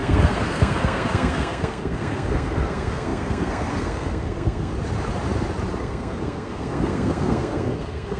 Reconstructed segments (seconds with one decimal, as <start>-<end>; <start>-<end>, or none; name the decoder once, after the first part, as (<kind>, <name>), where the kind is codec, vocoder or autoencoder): 0.0-4.7 (codec, SNAC); 5.8-8.2